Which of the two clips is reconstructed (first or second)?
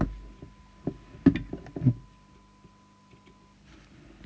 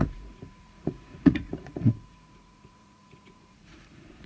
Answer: second